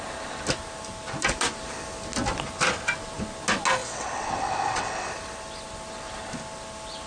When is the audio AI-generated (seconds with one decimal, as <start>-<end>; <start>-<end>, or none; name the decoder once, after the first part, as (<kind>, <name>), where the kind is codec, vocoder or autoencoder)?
3.8-5.1 (vocoder, WaveNeXt)